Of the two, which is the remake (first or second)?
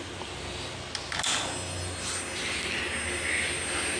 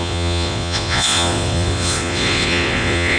second